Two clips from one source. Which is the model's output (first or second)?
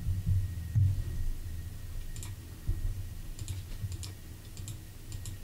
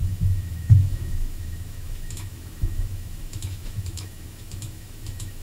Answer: second